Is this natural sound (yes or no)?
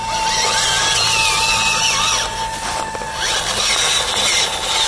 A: yes